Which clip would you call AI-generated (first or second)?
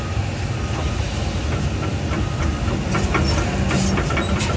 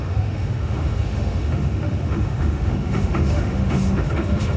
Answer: second